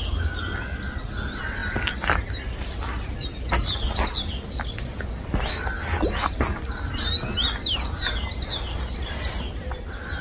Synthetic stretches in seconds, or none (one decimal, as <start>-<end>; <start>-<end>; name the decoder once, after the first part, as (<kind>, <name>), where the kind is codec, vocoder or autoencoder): none